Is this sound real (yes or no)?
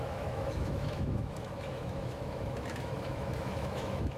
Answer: no